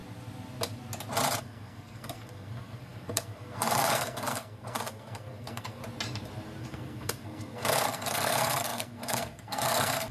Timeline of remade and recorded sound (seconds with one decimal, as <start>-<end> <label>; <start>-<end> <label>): 0.0-1.4 recorded; 1.4-5.8 remade; 5.8-6.6 recorded; 6.6-10.1 remade